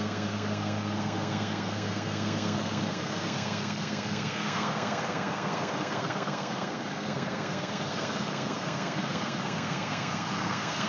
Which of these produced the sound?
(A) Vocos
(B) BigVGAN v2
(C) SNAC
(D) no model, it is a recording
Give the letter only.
C